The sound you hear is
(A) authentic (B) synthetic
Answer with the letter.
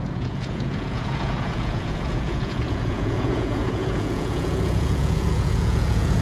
B